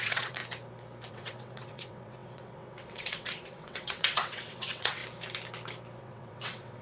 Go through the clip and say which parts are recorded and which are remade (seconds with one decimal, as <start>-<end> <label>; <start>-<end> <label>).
0.0-0.4 remade; 0.4-1.1 recorded; 1.1-5.0 remade; 5.0-6.0 recorded; 6.0-6.8 remade